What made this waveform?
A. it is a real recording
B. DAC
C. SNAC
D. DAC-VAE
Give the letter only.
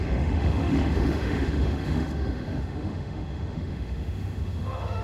D